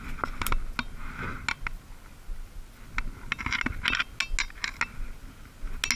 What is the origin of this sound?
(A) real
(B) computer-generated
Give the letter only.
A